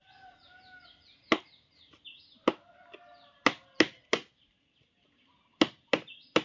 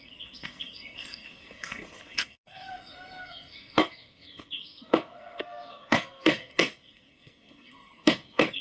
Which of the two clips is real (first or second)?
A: first